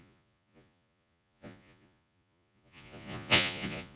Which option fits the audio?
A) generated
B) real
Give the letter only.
A